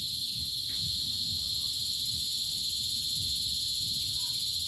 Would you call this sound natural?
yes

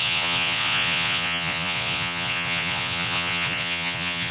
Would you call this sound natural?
no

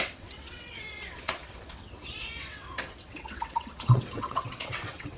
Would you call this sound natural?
no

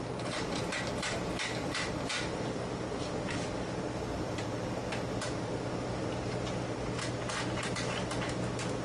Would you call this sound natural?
yes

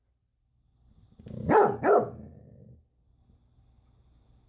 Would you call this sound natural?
yes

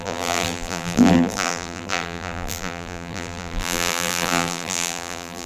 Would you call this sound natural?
no